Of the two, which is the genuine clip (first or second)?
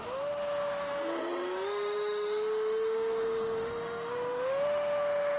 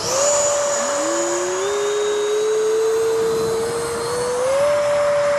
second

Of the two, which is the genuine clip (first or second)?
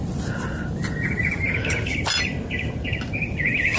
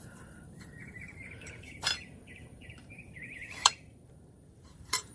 first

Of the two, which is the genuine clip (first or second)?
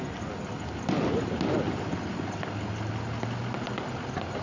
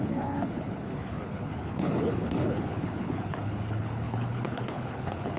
first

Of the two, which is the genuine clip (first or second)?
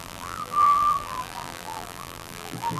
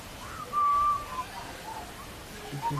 second